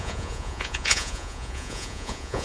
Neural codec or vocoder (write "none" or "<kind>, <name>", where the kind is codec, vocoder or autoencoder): vocoder, Vocos